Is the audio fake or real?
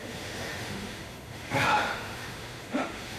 fake